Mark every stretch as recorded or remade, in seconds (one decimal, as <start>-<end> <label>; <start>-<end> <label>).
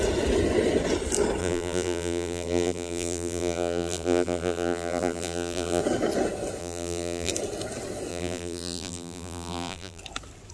0.0-1.4 recorded; 1.4-5.8 remade; 5.8-6.6 recorded; 6.6-7.3 remade; 7.3-8.1 recorded; 8.1-10.0 remade; 10.0-10.5 recorded